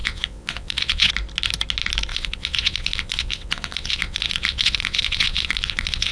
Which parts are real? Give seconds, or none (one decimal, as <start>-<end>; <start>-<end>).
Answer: 1.1-2.1